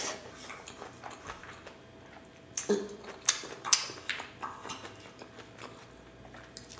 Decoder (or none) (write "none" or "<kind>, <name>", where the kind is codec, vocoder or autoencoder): none